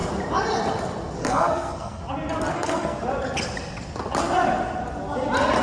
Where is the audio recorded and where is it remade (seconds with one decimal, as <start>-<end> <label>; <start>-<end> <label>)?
0.0-1.2 recorded; 1.2-2.0 remade; 2.0-2.5 recorded; 2.5-3.0 remade; 3.0-5.6 recorded